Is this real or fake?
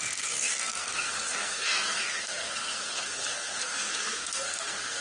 fake